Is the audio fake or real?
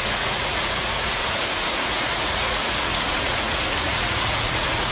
fake